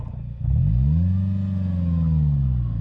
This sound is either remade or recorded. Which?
recorded